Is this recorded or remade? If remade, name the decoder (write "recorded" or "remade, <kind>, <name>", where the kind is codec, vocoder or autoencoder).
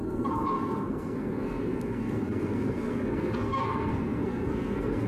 remade, codec, SNAC